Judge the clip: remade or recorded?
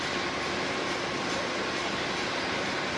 recorded